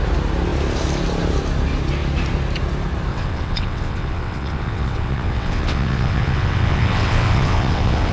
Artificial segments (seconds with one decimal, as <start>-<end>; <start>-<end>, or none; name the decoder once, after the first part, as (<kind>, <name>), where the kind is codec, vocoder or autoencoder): 3.1-8.1 (vocoder, WaveNeXt)